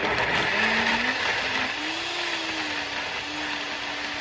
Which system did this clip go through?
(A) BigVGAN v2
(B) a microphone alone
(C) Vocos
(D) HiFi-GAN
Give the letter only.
B